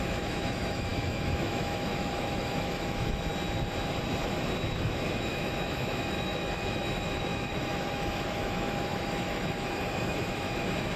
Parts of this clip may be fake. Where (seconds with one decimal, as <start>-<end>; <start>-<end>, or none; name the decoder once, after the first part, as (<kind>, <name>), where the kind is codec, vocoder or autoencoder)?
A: 0.0-3.3 (autoencoder, DAC-VAE); 4.7-11.0

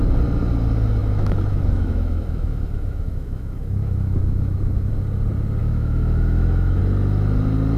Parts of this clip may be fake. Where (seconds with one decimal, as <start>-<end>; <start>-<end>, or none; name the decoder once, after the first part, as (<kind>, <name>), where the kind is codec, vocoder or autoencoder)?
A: 1.0-4.9 (autoencoder, DAC-VAE); 5.6-6.8

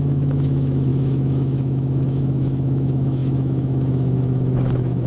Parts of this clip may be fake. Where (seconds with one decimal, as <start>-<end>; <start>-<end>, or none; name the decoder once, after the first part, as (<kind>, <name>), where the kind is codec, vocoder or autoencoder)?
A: 0.0-5.1 (autoencoder, DAC-VAE)

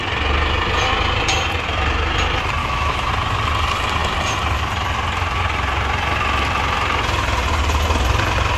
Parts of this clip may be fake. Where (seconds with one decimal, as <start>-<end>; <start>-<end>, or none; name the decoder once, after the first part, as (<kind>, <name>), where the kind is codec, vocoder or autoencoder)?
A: 2.6-3.1 (autoencoder, DAC-VAE)

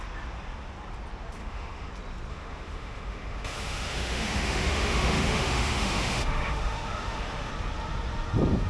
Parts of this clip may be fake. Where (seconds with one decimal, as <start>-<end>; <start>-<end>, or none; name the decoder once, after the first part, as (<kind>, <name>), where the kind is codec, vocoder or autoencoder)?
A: 1.4-1.9 (autoencoder, DAC-VAE); 2.3-7.5

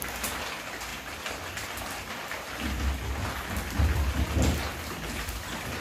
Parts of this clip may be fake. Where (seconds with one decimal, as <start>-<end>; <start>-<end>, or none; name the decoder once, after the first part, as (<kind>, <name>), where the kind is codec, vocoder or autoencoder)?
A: none

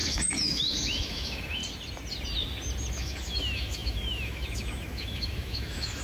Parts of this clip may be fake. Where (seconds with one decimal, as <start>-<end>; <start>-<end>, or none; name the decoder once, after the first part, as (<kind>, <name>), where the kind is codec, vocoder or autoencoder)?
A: 0.0-1.6 (autoencoder, DAC-VAE); 2.9-6.0

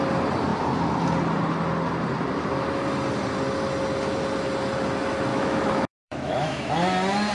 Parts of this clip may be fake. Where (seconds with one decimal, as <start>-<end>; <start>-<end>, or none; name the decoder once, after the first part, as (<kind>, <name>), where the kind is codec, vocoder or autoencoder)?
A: 5.3-6.7 (autoencoder, DAC-VAE)